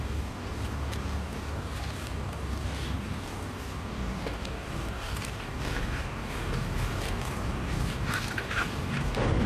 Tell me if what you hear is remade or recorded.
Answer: remade